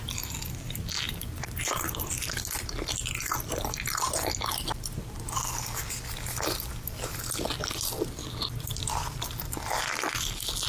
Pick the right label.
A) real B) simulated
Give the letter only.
A